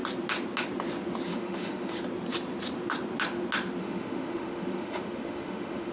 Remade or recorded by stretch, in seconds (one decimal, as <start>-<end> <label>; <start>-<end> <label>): 0.0-1.3 recorded; 1.3-1.9 remade; 1.9-3.8 recorded; 3.8-5.9 remade